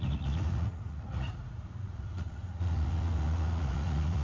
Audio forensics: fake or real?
fake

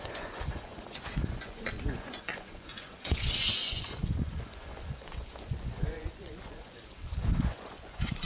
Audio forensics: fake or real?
fake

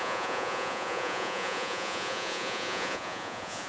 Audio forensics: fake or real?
fake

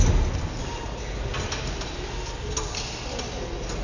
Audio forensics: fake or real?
real